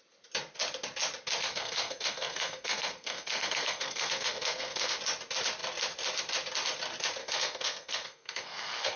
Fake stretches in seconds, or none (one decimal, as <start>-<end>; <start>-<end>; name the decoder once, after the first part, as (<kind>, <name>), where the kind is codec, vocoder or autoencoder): 1.4-5.0 (codec, SNAC); 7.2-9.0